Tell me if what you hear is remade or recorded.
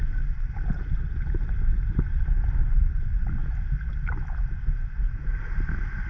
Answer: recorded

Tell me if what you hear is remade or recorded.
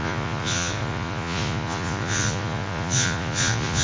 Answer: remade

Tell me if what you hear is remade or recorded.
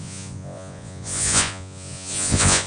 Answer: remade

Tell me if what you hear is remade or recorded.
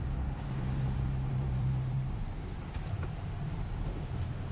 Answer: remade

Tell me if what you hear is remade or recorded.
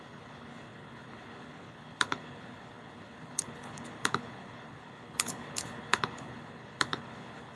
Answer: remade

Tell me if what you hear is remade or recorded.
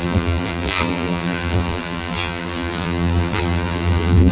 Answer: remade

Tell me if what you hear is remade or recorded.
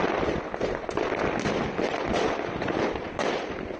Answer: recorded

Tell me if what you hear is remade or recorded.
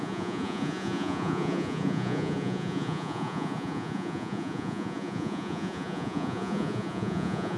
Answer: remade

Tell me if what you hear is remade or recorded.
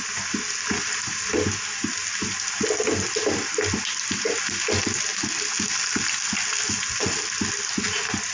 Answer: recorded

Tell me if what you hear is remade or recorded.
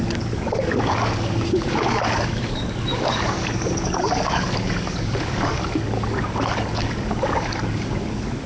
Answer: remade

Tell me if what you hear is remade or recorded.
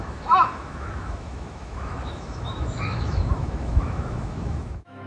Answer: remade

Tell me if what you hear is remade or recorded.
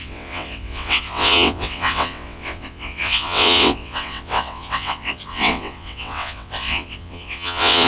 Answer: remade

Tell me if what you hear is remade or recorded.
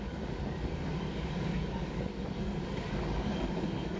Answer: remade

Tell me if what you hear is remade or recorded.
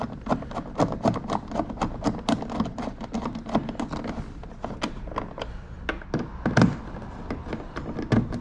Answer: recorded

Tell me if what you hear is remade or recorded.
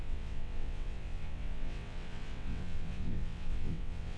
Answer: remade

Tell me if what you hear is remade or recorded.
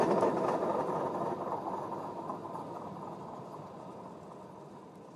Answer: recorded